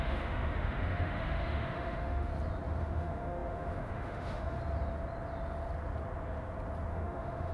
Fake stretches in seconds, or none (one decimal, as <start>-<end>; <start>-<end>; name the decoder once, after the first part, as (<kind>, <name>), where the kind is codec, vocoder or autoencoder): 0.0-2.3 (autoencoder, DAC-VAE); 2.8-4.6; 6.9-7.5